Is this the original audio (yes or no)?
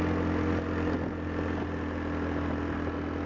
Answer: yes